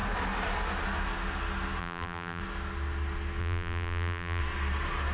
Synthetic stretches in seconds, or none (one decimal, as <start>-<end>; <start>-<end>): 1.8-2.4; 3.4-4.4